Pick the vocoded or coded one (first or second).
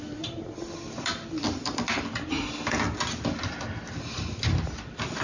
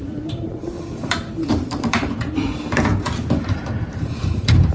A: second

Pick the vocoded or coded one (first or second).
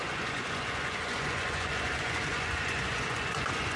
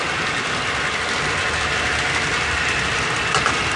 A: first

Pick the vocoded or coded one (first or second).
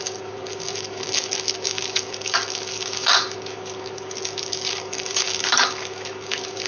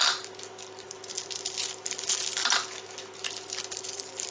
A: first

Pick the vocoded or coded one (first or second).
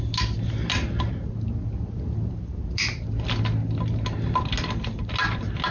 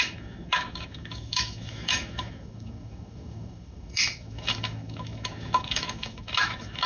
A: second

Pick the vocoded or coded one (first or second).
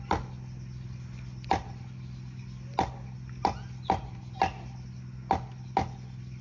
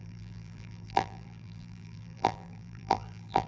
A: second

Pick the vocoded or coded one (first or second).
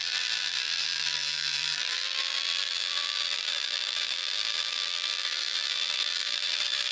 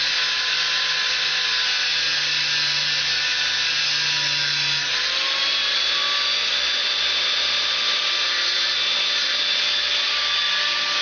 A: first